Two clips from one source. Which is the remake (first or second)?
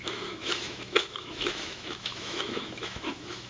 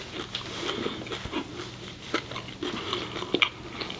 first